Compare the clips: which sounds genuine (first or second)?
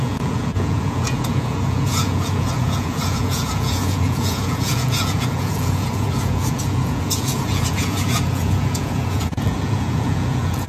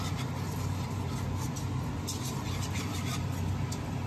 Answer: second